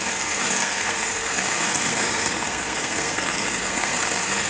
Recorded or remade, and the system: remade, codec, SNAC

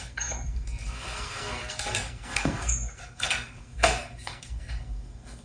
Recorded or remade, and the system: remade, codec, SNAC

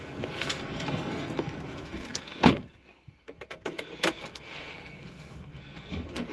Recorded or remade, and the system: remade, codec, SNAC